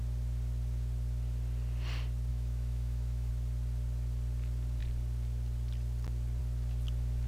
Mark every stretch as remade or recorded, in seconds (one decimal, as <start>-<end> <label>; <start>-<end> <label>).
0.0-2.3 recorded; 2.3-3.3 remade; 3.3-7.3 recorded

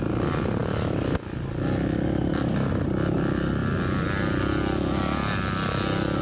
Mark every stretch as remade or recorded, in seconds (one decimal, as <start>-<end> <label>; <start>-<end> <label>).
0.0-6.2 recorded

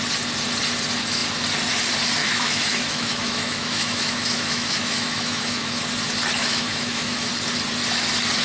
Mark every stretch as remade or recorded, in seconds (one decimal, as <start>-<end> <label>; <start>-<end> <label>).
0.0-2.2 recorded; 2.2-5.8 remade; 5.8-6.4 recorded; 6.4-7.3 remade; 7.3-8.4 recorded

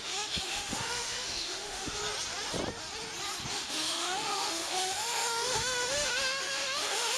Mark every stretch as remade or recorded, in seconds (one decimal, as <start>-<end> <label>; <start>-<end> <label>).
0.0-2.0 remade; 2.0-3.5 recorded; 3.5-7.2 remade